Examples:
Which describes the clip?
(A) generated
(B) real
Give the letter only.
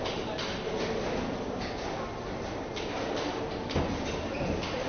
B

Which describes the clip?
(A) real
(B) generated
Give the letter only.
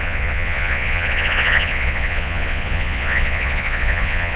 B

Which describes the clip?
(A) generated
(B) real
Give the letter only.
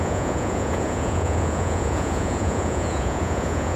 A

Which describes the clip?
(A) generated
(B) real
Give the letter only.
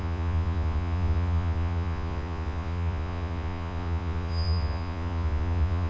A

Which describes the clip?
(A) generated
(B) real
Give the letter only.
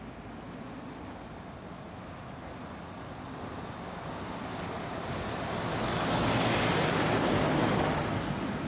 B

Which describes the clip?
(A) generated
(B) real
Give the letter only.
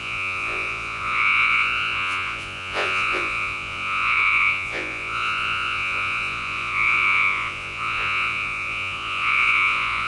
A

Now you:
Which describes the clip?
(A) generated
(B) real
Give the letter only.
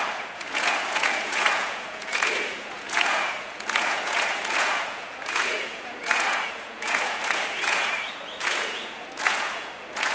A